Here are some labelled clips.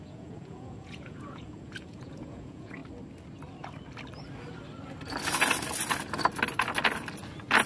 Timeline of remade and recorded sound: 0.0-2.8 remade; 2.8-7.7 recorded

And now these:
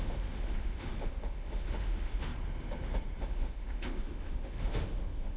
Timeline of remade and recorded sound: 0.0-2.3 remade; 2.3-3.2 recorded; 3.2-5.4 remade

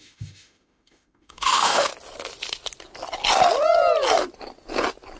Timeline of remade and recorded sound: 0.0-1.9 remade; 1.9-5.2 recorded

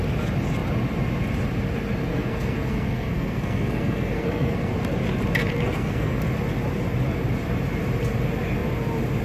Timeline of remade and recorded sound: 0.0-2.1 recorded; 2.1-4.7 remade; 4.7-5.5 recorded; 5.5-6.2 remade; 6.2-9.2 recorded

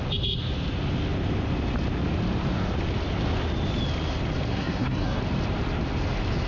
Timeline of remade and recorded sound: 0.0-4.5 recorded; 4.5-5.2 remade; 5.2-6.5 recorded